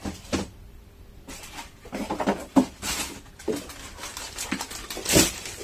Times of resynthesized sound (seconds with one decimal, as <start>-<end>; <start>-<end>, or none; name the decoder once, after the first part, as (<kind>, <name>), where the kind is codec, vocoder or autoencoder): none